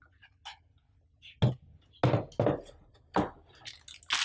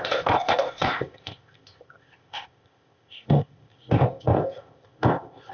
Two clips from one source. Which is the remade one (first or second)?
second